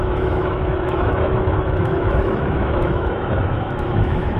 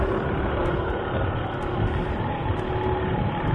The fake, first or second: first